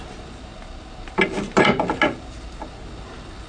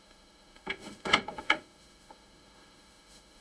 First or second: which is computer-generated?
second